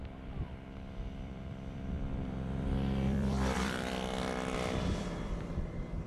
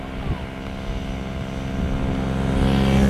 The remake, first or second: first